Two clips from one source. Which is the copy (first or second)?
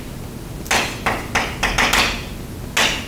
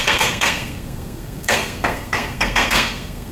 second